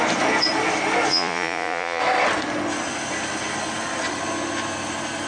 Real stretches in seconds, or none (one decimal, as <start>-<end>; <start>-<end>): 0.0-1.1; 2.0-5.3